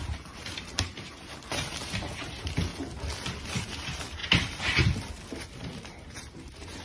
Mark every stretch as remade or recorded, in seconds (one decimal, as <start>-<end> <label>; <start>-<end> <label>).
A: 0.0-2.7 remade; 2.7-3.4 recorded; 3.4-4.2 remade; 4.2-5.1 recorded; 5.1-6.8 remade